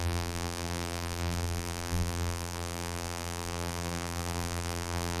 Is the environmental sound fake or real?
fake